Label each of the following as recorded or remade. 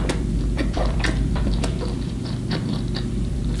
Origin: remade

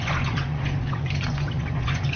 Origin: remade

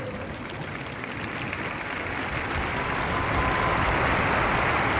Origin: recorded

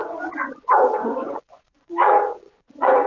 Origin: remade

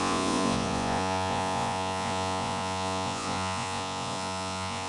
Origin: remade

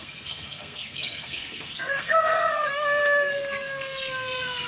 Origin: remade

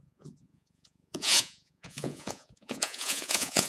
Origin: remade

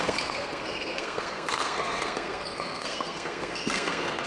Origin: remade